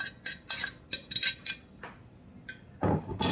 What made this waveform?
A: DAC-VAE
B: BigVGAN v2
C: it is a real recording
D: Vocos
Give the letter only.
C